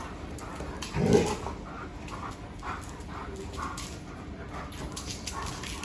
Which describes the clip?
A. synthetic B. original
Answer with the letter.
B